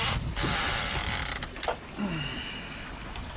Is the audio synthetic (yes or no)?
no